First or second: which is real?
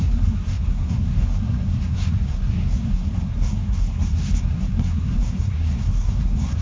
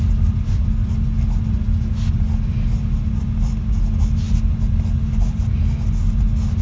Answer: second